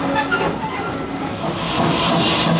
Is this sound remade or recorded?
recorded